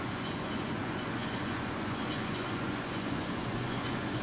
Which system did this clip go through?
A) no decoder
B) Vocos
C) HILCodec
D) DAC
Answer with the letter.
B